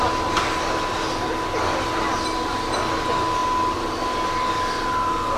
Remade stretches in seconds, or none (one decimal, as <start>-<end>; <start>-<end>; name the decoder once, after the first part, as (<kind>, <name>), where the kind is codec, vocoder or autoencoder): none